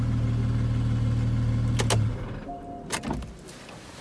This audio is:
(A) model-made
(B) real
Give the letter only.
B